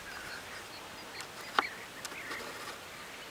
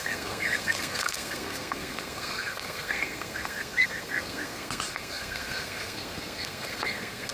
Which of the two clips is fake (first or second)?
second